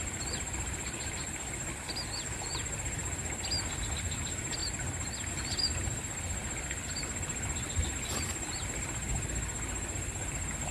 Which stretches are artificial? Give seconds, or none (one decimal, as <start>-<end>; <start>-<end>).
6.4-7.0